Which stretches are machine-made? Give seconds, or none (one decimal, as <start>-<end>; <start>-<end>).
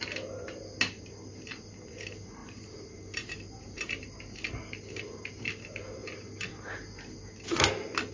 2.4-4.2